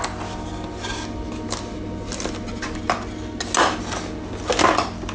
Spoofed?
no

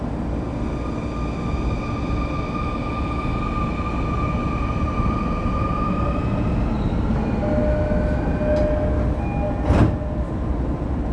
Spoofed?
no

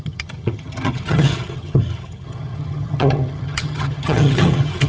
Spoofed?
yes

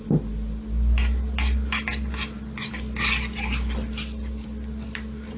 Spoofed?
no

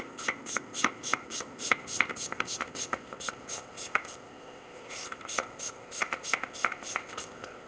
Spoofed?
yes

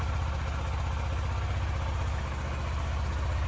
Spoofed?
no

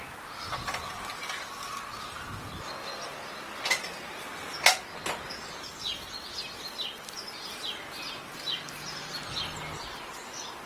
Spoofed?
no